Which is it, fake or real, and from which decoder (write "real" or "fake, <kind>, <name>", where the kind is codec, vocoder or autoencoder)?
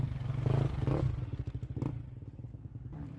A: real